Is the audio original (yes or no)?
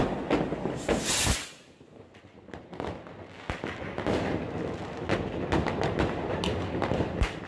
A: yes